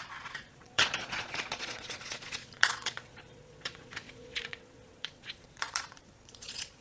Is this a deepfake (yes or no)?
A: yes